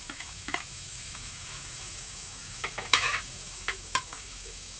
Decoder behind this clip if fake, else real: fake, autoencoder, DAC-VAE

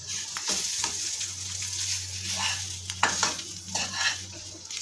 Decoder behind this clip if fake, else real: fake, vocoder, Vocos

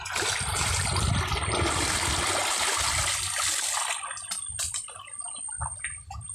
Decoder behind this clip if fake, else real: real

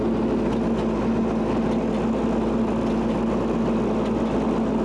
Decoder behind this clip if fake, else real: real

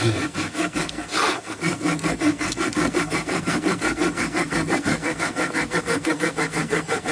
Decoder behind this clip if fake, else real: fake, codec, SNAC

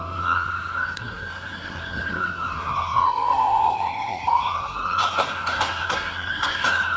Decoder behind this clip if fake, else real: fake, codec, SNAC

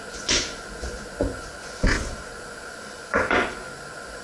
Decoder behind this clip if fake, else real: fake, vocoder, Vocos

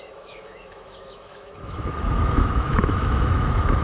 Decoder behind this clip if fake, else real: fake, autoencoder, DAC-VAE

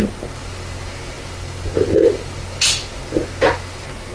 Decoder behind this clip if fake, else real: real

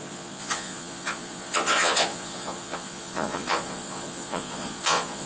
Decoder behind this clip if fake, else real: fake, vocoder, Vocos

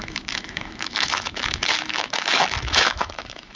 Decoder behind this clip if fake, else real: fake, autoencoder, DAC-VAE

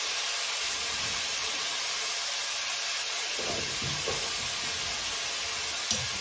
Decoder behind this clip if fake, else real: real